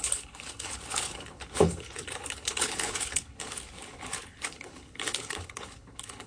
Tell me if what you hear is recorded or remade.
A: remade